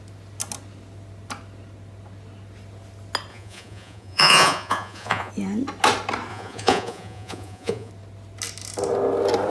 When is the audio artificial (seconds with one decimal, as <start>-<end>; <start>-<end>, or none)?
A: 3.3-5.3; 6.3-7.9